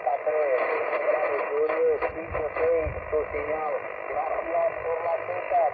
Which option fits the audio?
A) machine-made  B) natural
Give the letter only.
B